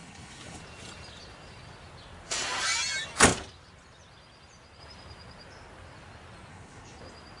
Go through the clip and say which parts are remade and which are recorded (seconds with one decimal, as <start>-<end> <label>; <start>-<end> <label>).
0.0-0.6 remade; 0.6-6.5 recorded; 6.5-7.0 remade; 7.0-7.4 recorded